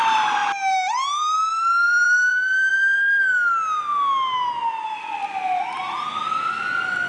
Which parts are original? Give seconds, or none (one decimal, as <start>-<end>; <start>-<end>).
0.0-0.4; 2.7-7.1